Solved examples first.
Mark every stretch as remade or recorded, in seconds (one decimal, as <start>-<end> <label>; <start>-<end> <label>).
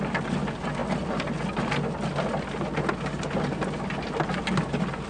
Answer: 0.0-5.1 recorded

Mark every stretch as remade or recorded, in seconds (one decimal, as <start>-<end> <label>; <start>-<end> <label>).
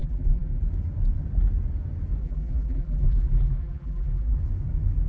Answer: 0.0-0.6 remade; 0.6-2.2 recorded; 2.2-4.4 remade; 4.4-5.1 recorded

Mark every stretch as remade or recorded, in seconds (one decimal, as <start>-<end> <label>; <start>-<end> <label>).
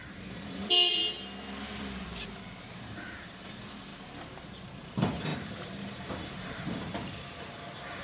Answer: 0.0-1.0 remade; 1.0-1.8 recorded; 1.8-3.9 remade; 3.9-4.5 recorded; 4.5-8.0 remade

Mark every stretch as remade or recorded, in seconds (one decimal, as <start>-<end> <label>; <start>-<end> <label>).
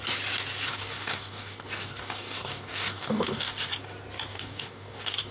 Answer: 0.0-0.7 recorded; 0.7-3.7 remade; 3.7-4.3 recorded; 4.3-5.3 remade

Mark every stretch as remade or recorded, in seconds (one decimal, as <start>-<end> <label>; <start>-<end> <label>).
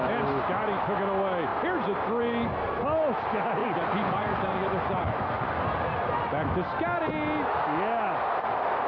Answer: 0.0-3.6 recorded; 3.6-5.6 remade; 5.6-8.9 recorded